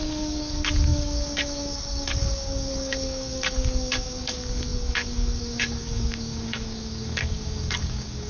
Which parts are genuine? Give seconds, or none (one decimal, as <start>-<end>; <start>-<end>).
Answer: none